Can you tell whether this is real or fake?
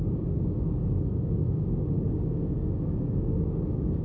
fake